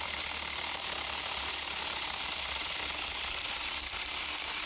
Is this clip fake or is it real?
real